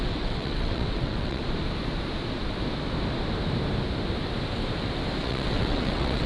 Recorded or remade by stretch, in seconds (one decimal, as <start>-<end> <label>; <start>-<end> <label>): 0.0-1.4 remade; 1.4-5.2 recorded; 5.2-6.3 remade